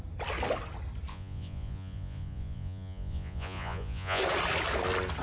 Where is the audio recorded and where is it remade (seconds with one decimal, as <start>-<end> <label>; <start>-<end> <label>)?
0.0-1.1 recorded; 1.1-4.2 remade; 4.2-5.2 recorded